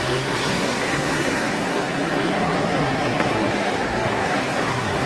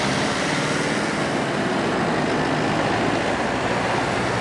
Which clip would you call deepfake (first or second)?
first